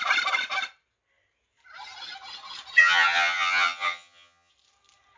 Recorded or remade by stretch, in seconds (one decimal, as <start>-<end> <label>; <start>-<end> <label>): 0.0-2.8 recorded; 2.8-4.5 remade; 4.5-5.2 recorded